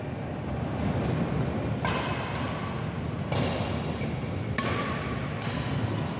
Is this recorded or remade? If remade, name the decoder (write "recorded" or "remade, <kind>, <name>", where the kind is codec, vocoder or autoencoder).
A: recorded